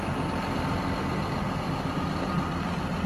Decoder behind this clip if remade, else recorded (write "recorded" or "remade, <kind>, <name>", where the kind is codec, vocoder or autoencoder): recorded